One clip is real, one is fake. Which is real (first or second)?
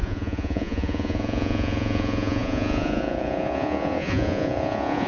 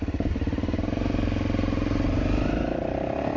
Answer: second